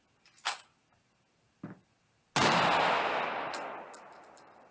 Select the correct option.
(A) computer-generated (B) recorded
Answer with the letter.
B